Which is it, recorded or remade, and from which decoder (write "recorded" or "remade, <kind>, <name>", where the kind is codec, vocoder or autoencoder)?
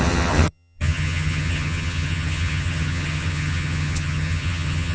remade, vocoder, HiFi-GAN